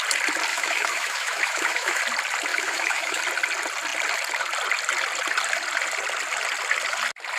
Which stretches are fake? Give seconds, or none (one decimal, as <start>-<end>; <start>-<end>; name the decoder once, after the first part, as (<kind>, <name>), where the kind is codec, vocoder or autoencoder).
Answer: 0.5-2.0 (autoencoder, DAC-VAE); 2.5-3.2